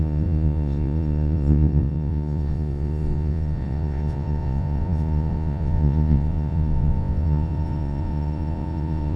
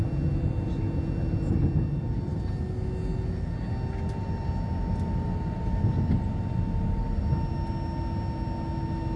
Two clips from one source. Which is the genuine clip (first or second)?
second